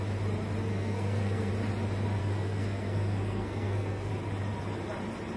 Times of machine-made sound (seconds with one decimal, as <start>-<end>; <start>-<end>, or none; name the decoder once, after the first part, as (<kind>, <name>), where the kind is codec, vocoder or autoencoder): 0.7-1.5 (codec, SNAC); 2.2-4.1